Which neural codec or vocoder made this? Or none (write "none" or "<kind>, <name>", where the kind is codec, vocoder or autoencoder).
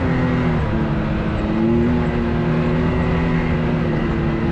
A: none